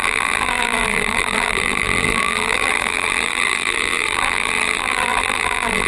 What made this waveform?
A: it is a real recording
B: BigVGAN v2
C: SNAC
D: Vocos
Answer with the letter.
B